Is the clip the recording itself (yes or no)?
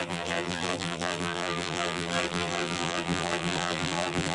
no